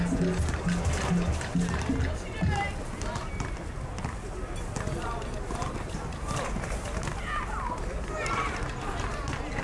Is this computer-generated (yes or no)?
no